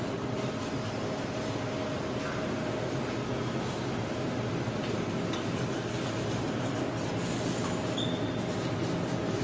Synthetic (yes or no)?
no